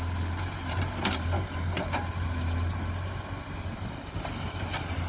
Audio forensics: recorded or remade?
recorded